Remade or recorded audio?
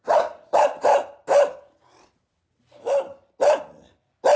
recorded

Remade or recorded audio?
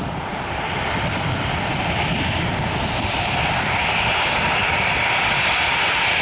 recorded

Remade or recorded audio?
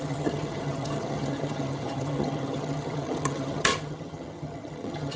remade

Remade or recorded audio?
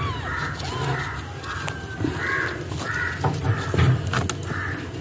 recorded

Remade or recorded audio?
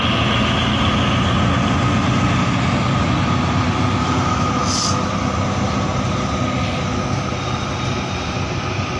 recorded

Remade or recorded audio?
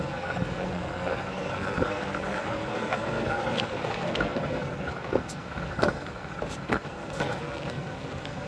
remade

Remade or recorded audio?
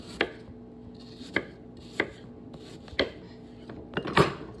recorded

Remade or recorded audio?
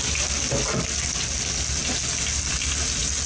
recorded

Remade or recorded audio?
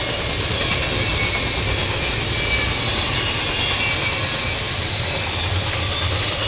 recorded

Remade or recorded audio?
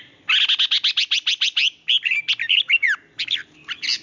recorded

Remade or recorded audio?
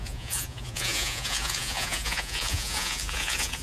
remade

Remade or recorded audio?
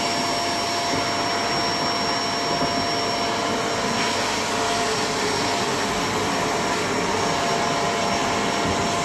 recorded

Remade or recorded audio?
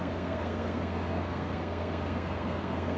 remade